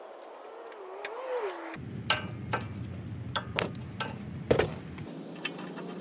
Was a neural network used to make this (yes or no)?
no